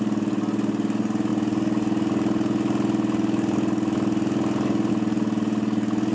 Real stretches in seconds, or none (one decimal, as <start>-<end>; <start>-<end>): 0.0-6.1